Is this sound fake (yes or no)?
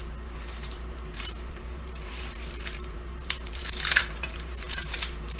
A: yes